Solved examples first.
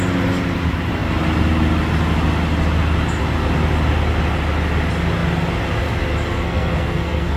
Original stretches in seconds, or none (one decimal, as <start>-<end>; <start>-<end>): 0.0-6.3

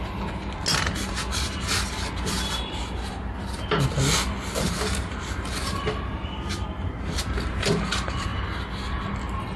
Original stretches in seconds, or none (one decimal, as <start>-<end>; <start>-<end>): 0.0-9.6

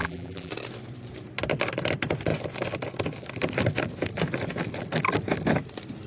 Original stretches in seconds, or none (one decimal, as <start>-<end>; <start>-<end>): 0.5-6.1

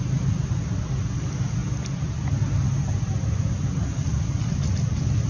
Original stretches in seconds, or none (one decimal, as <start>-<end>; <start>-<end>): 0.0-5.3

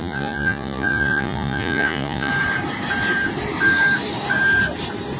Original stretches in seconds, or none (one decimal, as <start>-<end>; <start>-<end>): 2.3-5.2

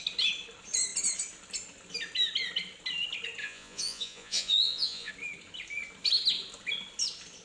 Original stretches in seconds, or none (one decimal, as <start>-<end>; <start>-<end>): 0.0-3.4; 5.1-7.4

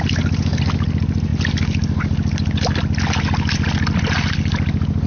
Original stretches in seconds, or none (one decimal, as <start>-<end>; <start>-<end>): 0.0-5.1

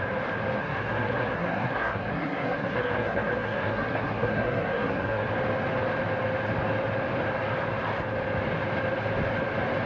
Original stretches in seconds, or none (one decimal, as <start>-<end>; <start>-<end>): 0.0-0.6; 5.3-9.9